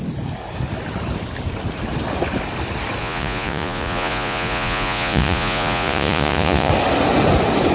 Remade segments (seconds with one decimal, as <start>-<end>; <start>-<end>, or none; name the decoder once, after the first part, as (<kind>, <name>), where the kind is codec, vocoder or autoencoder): 3.0-6.7 (vocoder, Vocos)